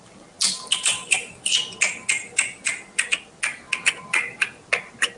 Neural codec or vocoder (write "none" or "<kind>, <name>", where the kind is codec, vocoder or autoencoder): none